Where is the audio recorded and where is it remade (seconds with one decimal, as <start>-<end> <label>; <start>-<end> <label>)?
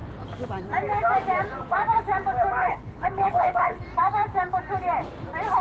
0.0-2.6 recorded; 2.6-3.8 remade; 3.8-5.6 recorded